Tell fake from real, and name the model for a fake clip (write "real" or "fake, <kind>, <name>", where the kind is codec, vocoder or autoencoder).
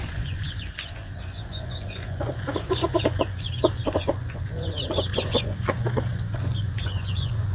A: fake, vocoder, Vocos